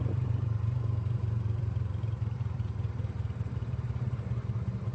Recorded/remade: remade